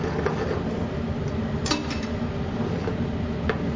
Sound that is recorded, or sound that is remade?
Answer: recorded